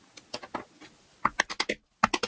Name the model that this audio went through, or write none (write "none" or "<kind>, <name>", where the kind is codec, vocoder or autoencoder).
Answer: none